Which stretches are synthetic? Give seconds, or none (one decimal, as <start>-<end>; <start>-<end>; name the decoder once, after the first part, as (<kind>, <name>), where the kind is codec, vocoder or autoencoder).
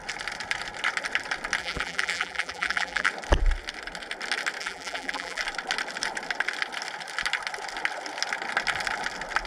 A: 1.6-3.1 (vocoder, BigVGAN v2); 4.6-5.4